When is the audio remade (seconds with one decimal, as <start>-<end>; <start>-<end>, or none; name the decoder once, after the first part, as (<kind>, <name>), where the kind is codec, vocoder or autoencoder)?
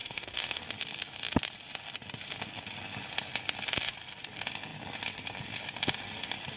0.0-0.6 (autoencoder, DAC-VAE)